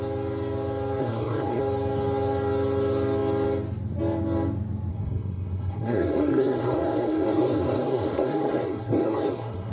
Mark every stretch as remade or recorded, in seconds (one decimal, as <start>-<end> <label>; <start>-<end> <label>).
0.0-1.0 recorded; 1.0-1.6 remade; 1.6-4.9 recorded; 4.9-9.7 remade